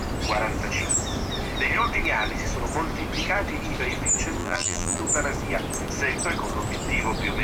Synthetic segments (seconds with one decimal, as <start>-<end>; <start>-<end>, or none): 4.4-5.0